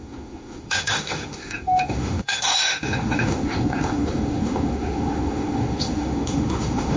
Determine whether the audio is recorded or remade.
remade